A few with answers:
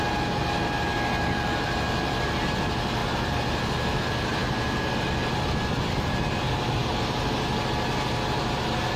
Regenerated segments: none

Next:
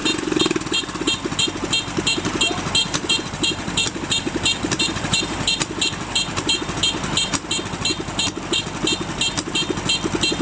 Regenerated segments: 0.0-1.2 (vocoder, BigVGAN v2); 2.8-6.4

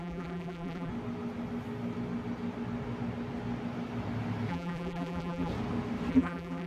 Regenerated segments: 0.0-0.9 (vocoder, BigVGAN v2); 4.5-5.5; 6.1-6.7

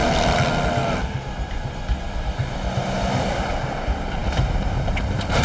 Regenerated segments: none